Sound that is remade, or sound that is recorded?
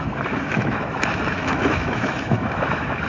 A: remade